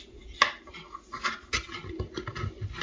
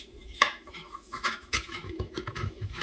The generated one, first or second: second